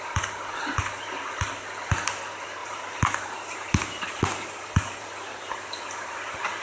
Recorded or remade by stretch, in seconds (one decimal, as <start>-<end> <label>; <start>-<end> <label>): 0.0-2.6 recorded; 2.6-6.6 remade